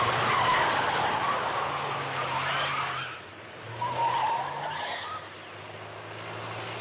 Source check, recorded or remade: recorded